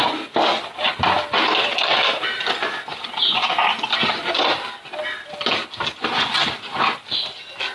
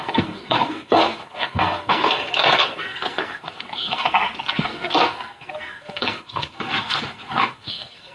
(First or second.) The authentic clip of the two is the first